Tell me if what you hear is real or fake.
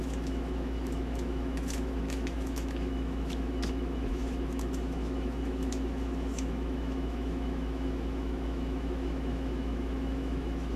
fake